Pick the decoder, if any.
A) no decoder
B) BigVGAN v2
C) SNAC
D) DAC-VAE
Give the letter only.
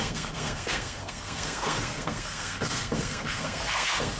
C